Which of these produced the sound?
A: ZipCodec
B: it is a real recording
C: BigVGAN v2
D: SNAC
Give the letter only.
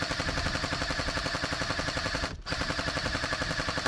B